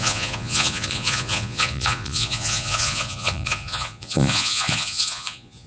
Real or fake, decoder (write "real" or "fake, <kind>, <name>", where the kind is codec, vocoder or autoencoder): fake, vocoder, Vocos